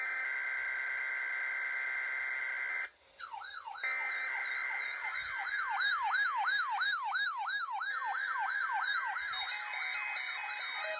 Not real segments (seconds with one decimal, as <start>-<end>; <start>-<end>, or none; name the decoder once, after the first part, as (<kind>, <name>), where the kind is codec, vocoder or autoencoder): none